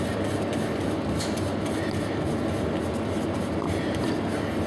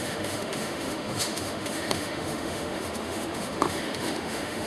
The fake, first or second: second